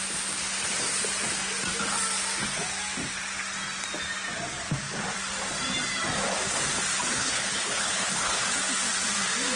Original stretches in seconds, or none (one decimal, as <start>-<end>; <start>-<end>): 0.0-7.2; 8.5-9.6